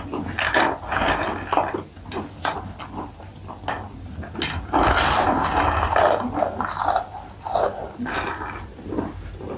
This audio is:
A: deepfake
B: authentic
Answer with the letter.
B